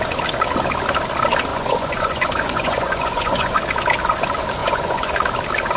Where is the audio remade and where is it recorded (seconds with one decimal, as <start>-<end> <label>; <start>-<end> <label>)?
0.0-1.5 recorded; 1.5-3.6 remade; 3.6-4.6 recorded; 4.6-5.1 remade; 5.1-5.8 recorded